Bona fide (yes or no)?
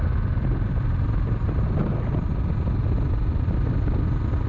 yes